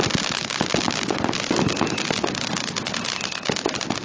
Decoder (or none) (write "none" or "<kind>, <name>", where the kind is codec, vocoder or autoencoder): none